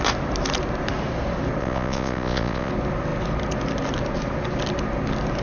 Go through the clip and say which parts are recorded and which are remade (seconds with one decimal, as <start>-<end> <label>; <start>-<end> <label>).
0.0-1.6 recorded; 1.6-2.7 remade; 2.7-5.4 recorded